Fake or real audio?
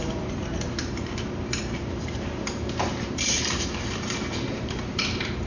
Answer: fake